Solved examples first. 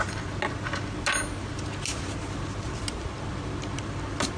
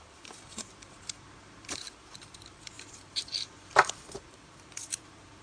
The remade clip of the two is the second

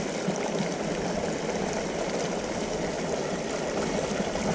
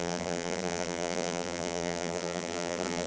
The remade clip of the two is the second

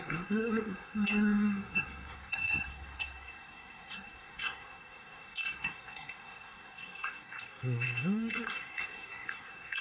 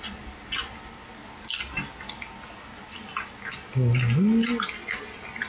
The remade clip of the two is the first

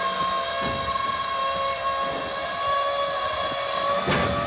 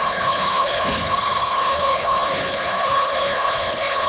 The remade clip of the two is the second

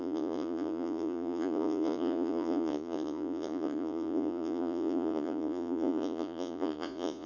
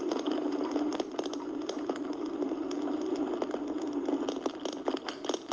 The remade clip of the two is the first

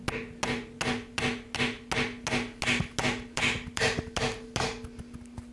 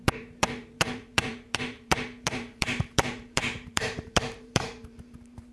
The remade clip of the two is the second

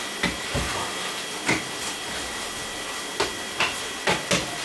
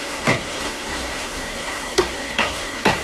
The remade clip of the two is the second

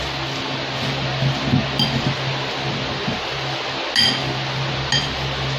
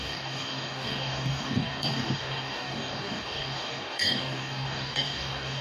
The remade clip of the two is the second